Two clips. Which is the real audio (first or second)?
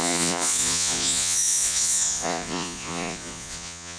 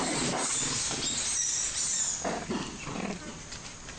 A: second